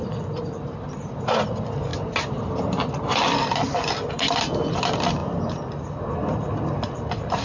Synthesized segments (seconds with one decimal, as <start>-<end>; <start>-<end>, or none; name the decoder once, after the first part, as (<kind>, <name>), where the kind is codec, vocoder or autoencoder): none